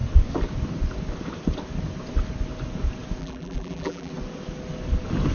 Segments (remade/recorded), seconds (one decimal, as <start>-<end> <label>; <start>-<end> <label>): 0.0-3.2 recorded; 3.2-4.1 remade; 4.1-5.3 recorded